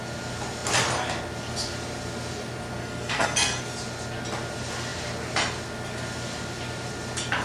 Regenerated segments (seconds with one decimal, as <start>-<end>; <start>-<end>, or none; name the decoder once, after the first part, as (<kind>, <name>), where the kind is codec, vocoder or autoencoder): 2.8-3.6 (codec, SNAC)